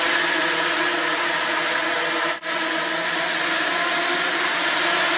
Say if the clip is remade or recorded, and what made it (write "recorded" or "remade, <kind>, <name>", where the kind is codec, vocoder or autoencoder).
recorded